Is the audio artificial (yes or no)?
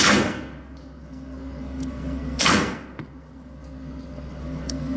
yes